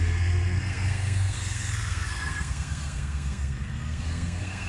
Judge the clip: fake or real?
fake